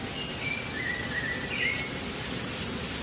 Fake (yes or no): no